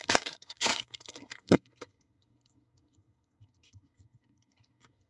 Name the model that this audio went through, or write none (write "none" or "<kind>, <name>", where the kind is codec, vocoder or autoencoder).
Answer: codec, SNAC